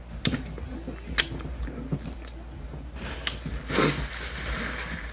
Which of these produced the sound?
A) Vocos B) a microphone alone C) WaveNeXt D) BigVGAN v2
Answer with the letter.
B